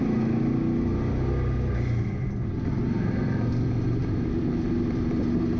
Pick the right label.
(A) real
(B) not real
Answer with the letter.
A